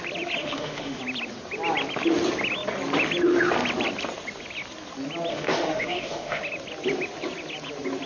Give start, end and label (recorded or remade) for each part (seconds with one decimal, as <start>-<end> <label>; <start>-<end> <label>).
0.0-0.4 recorded; 0.4-1.0 remade; 1.0-5.3 recorded; 5.3-6.4 remade; 6.4-8.1 recorded